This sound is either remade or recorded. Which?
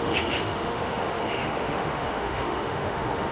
remade